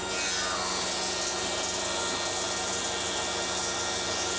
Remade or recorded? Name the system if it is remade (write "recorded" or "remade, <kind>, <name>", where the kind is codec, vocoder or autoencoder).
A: recorded